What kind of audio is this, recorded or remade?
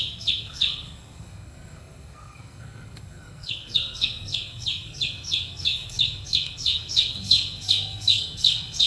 remade